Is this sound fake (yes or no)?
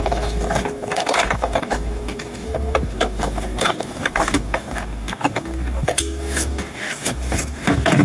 yes